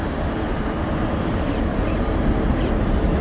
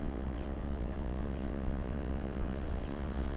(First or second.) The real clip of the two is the first